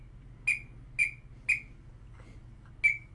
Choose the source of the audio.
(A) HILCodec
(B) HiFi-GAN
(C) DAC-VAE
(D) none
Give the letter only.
D